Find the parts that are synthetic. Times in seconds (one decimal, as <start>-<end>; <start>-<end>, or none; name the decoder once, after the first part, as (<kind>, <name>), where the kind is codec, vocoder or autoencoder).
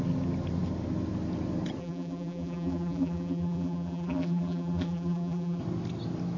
1.8-5.6 (vocoder, BigVGAN v2)